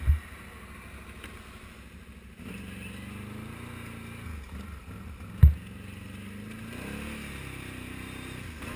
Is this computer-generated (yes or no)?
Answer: no